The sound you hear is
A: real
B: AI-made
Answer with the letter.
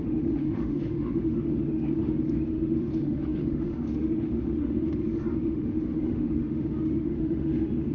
B